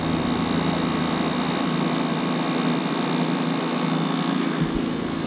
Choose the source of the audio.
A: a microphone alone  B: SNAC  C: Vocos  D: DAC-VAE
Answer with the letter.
A